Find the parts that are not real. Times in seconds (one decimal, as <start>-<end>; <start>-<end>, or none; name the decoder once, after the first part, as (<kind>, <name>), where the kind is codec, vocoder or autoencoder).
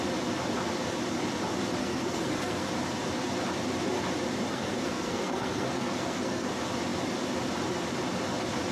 1.8-2.7 (codec, SNAC); 4.5-6.5